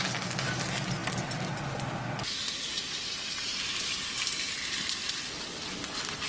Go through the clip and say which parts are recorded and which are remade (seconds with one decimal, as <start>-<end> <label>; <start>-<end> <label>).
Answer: 0.0-6.3 recorded